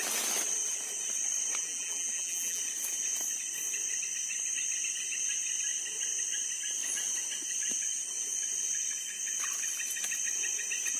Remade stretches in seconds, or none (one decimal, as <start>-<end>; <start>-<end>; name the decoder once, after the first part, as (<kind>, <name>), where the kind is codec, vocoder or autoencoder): 1.6-2.6 (vocoder, BigVGAN v2)